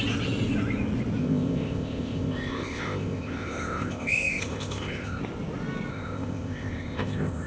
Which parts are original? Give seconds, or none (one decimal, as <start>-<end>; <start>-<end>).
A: 0.0-1.2; 5.2-5.9